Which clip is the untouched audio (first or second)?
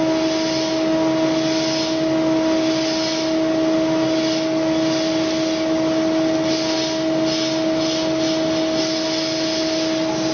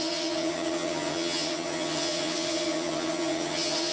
first